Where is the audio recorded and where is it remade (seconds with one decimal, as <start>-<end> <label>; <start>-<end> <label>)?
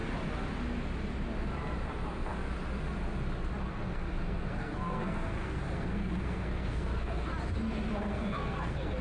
0.0-3.6 recorded; 3.6-7.3 remade; 7.3-8.0 recorded; 8.0-9.0 remade